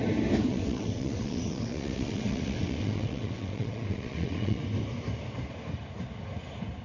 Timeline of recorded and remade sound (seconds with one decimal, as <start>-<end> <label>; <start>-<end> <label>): 0.0-0.5 recorded; 0.5-4.6 remade; 4.6-6.8 recorded